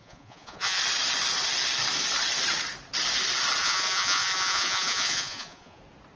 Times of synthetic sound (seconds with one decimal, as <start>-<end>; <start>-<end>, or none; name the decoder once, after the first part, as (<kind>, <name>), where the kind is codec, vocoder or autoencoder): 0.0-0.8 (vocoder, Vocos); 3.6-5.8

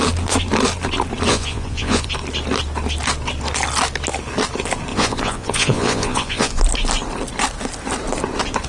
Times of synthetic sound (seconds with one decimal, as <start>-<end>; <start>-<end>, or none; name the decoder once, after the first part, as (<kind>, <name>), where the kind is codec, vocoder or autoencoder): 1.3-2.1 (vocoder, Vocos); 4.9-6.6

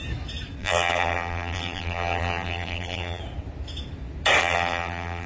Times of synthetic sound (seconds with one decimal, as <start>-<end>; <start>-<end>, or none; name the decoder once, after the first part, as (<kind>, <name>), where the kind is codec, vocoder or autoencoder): 0.6-3.2 (vocoder, BigVGAN v2); 4.4-5.3

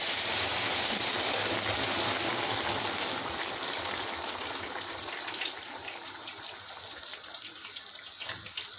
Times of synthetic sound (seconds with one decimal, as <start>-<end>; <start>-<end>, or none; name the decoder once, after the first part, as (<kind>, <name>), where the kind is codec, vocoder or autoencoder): none